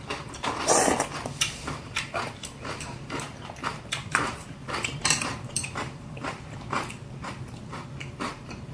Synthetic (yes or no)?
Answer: yes